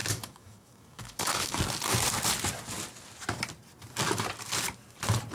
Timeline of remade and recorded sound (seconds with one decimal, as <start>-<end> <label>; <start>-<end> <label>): 0.0-1.6 remade; 1.6-5.3 recorded